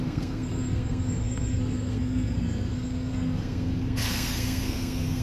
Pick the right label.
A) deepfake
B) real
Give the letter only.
A